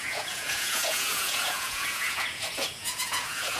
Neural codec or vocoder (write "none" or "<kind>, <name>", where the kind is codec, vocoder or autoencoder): vocoder, Vocos